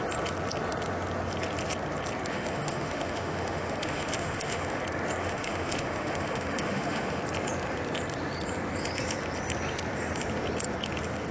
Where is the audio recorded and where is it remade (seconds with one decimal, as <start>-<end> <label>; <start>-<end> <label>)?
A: 0.0-2.3 recorded; 2.3-4.8 remade; 4.8-5.2 recorded; 5.2-7.2 remade; 7.2-11.3 recorded